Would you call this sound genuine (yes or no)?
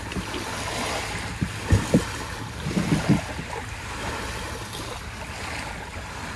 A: yes